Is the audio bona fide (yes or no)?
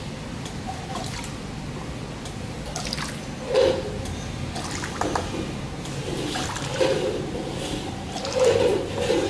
yes